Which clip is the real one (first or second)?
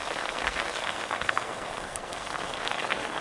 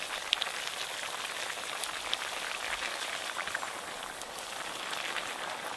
second